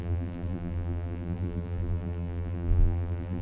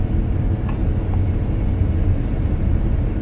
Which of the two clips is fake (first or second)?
first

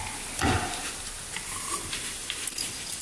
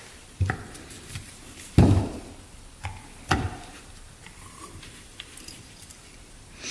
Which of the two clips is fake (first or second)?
second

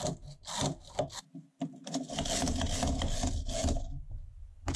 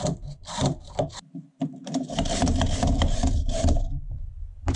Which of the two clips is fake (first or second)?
second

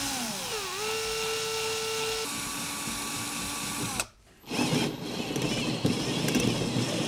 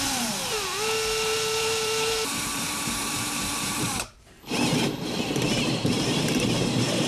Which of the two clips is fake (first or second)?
second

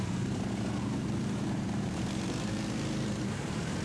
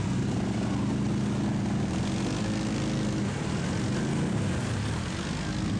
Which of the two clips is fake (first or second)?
first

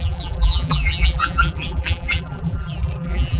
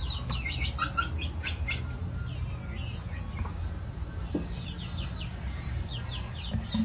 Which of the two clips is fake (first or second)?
first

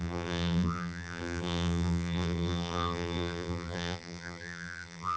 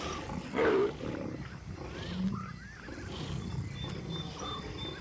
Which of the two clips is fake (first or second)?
first